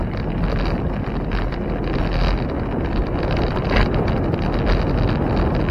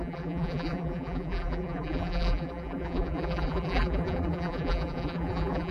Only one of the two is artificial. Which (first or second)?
second